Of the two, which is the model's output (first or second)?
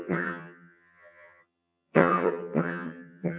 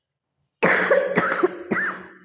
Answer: first